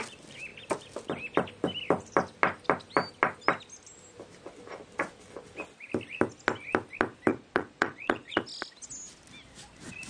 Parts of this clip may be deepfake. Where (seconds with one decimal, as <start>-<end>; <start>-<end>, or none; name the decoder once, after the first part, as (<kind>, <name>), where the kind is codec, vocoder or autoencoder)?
7.3-8.4 (vocoder, Vocos)